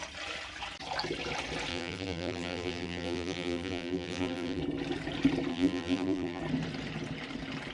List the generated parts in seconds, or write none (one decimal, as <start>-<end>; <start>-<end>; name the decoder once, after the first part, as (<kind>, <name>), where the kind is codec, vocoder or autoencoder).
1.7-4.6 (vocoder, BigVGAN v2); 5.5-6.4